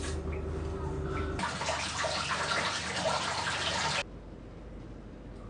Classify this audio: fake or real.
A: real